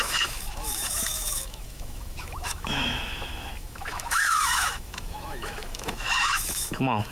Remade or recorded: remade